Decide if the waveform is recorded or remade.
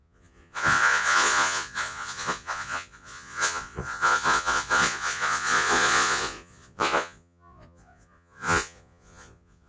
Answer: remade